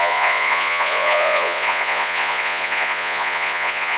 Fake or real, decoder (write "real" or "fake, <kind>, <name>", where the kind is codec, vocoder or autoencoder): fake, vocoder, Vocos